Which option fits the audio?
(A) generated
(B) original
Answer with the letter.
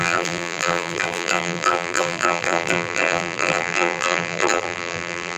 A